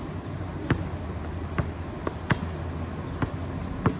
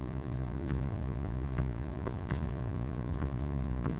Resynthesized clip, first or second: second